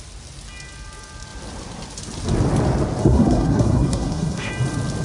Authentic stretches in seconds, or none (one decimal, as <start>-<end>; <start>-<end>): 0.0-3.0; 4.5-5.0